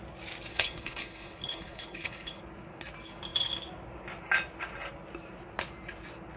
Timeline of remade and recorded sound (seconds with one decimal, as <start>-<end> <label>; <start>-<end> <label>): 0.0-0.5 recorded; 0.5-2.4 remade; 2.4-6.4 recorded